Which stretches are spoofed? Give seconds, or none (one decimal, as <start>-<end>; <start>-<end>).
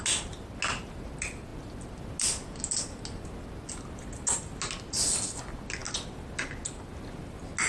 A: none